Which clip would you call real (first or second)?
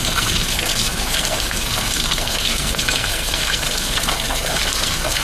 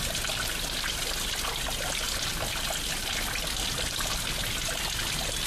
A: second